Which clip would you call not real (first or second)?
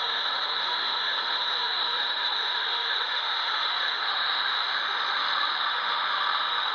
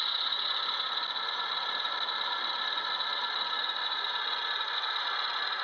first